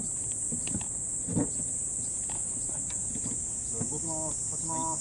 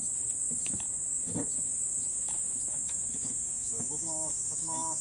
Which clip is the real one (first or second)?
first